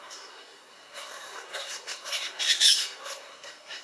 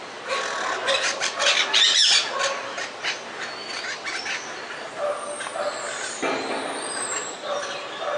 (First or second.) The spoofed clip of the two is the first